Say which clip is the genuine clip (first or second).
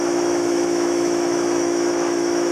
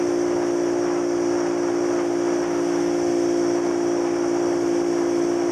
second